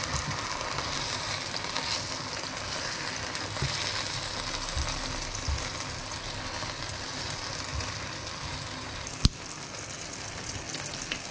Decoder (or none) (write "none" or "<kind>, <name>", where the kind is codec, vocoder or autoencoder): none